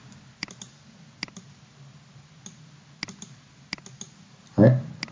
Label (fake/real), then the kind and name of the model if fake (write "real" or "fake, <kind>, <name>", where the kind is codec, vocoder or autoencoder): real